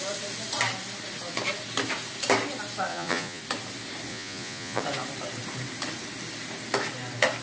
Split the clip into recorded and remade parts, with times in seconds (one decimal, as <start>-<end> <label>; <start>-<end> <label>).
0.0-2.9 recorded; 2.9-3.4 remade; 3.4-4.1 recorded; 4.1-4.8 remade; 4.8-7.4 recorded